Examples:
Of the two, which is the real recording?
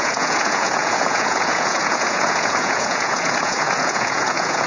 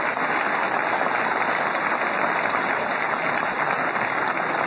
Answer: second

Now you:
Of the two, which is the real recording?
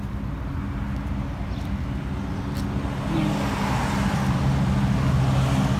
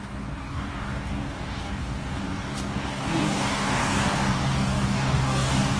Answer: first